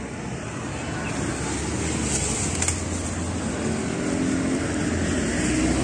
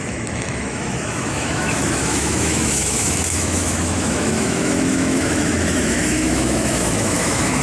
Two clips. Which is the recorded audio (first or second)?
first